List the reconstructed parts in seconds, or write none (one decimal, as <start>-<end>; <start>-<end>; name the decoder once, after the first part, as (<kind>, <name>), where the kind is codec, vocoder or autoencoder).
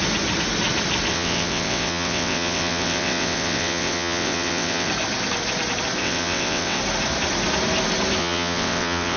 1.1-4.9 (vocoder, WaveNeXt); 6.0-6.8; 8.2-9.2